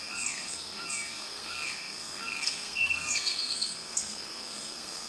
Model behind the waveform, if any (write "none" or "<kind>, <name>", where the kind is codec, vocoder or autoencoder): codec, SNAC